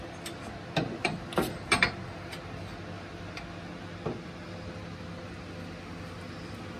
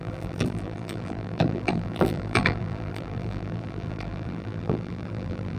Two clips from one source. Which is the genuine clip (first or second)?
first